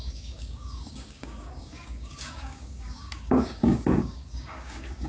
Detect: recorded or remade remade